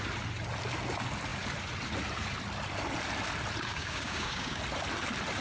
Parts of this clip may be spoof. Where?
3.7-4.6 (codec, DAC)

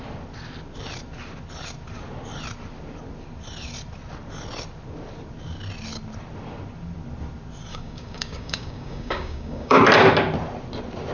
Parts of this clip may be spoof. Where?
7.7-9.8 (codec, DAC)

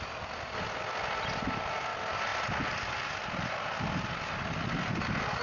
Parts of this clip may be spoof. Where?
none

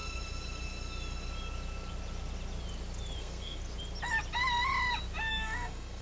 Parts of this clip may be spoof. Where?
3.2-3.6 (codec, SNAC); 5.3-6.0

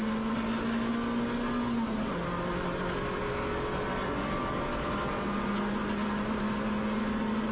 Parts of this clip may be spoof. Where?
none